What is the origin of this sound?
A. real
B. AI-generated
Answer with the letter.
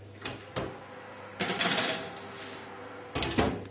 A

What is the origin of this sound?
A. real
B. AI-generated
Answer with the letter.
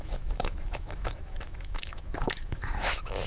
B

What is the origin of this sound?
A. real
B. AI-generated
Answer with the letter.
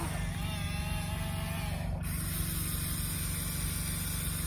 A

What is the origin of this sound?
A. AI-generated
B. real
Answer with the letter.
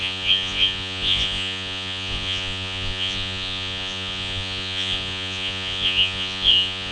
A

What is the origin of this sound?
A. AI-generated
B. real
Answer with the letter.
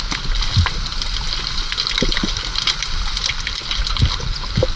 B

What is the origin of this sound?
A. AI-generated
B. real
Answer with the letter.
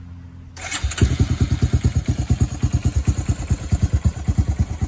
B